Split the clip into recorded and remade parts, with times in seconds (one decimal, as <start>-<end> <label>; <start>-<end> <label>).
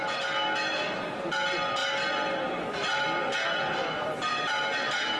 0.0-5.2 recorded